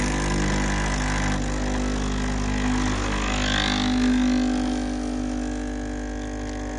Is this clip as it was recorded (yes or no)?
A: yes